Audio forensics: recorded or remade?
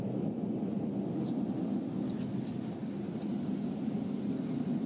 recorded